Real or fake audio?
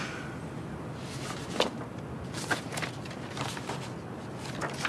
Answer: real